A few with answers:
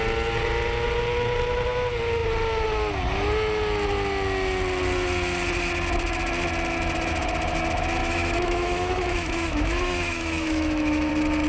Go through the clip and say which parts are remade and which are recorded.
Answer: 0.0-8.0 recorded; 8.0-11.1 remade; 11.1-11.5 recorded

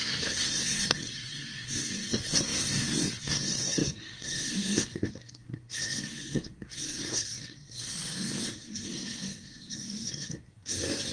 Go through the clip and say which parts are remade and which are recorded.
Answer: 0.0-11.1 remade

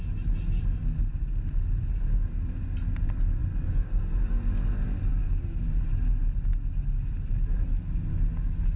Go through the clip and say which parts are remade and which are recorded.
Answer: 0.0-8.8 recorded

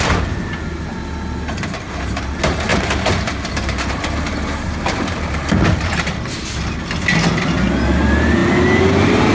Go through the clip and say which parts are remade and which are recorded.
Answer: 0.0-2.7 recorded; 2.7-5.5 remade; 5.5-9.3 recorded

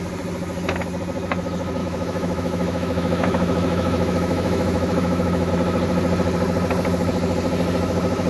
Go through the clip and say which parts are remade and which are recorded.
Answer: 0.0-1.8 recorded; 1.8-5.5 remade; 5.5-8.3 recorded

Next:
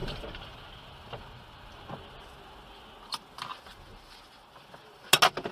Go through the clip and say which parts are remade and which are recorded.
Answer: 0.0-0.6 remade; 0.6-5.5 recorded

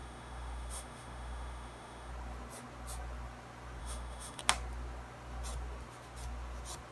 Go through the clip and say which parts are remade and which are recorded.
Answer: 0.0-2.1 remade; 2.1-3.8 recorded; 3.8-4.4 remade; 4.4-6.9 recorded